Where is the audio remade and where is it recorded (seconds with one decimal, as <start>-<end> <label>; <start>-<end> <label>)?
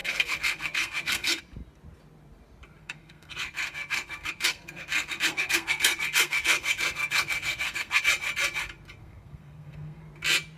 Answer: 0.0-1.4 remade; 1.4-2.8 recorded; 2.8-8.0 remade; 8.0-9.0 recorded; 9.0-10.0 remade; 10.0-10.6 recorded